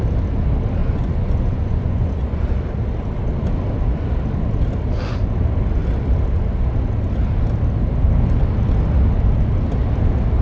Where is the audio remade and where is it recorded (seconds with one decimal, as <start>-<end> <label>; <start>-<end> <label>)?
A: 0.0-0.8 recorded; 0.8-2.5 remade; 2.5-10.4 recorded